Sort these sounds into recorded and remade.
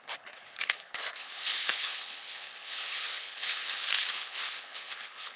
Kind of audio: remade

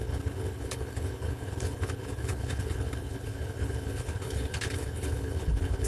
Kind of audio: remade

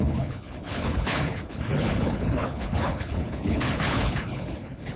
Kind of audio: remade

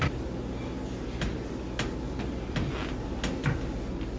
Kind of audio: recorded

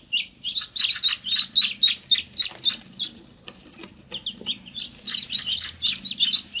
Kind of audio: recorded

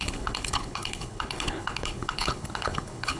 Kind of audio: remade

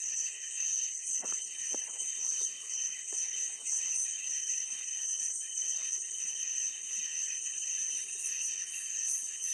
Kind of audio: remade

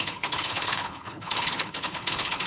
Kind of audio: remade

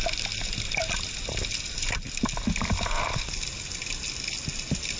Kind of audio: recorded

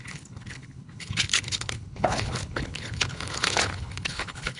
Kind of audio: remade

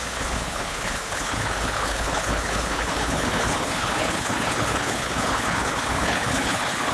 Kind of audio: remade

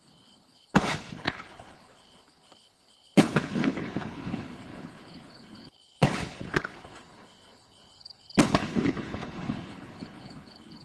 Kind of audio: remade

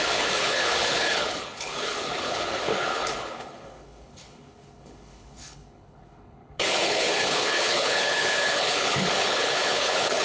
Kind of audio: remade